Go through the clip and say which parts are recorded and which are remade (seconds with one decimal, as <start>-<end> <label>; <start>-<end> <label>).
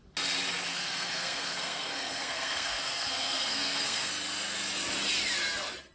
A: 0.0-0.7 recorded; 0.7-4.1 remade; 4.1-5.9 recorded